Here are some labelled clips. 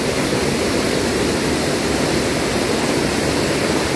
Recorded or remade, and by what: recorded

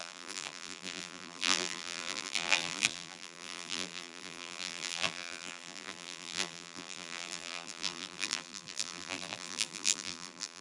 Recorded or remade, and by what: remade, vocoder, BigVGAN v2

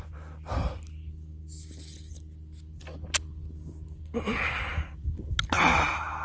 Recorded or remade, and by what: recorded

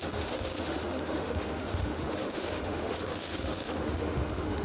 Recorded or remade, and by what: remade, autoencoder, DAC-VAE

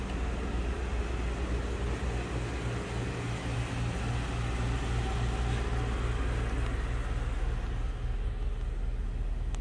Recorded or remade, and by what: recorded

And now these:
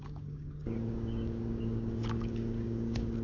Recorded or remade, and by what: remade, codec, DAC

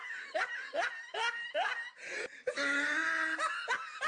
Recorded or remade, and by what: recorded